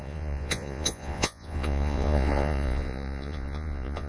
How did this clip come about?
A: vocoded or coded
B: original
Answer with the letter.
A